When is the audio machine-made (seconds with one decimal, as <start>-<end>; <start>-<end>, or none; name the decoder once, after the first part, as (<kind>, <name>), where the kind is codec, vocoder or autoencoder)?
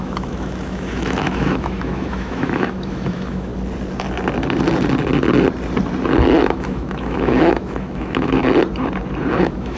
0.0-3.5 (autoencoder, DAC-VAE); 6.4-8.4; 9.3-9.8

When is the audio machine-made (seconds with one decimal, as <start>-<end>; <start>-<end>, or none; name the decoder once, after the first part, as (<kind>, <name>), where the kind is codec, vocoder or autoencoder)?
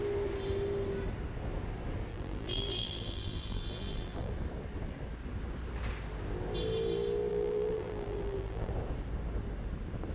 2.1-4.3 (vocoder, BigVGAN v2); 7.3-8.7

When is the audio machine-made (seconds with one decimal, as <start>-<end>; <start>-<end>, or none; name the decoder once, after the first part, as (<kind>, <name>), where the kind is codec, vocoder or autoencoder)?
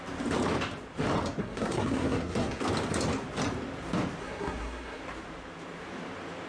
1.4-2.6 (codec, SNAC); 4.2-5.0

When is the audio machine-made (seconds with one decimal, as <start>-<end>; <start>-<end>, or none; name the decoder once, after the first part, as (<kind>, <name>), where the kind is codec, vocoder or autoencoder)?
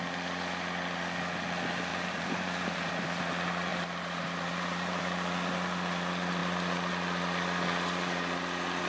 1.9-3.2 (vocoder, BigVGAN v2); 3.7-5.0